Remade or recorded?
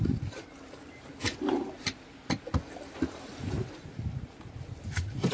recorded